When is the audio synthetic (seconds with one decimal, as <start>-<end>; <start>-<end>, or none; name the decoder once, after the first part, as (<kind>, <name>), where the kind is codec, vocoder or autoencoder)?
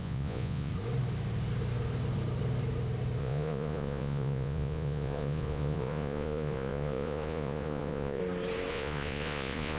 0.0-0.7 (vocoder, Vocos); 3.2-8.2; 8.7-9.8